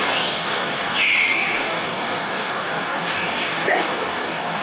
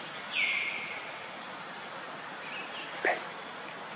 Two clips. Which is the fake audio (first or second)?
first